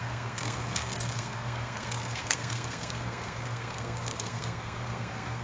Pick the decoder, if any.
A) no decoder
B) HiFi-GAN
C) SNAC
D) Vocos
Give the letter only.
C